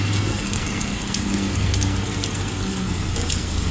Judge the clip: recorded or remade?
remade